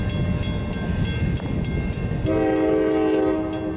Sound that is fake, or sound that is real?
real